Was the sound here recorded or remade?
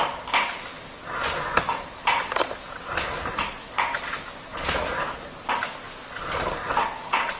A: recorded